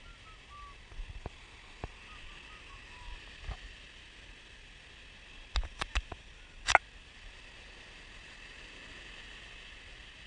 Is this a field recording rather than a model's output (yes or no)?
yes